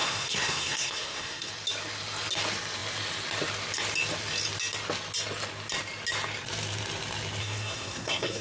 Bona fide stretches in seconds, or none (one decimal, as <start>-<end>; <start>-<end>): 1.5-7.4